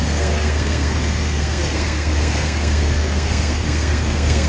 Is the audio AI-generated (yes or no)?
yes